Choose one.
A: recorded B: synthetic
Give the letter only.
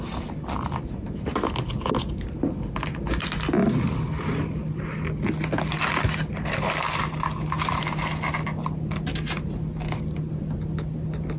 A